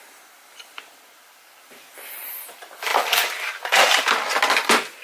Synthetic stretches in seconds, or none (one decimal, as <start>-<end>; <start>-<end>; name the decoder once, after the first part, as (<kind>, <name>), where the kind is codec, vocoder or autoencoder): 2.9-4.0 (vocoder, BigVGAN v2)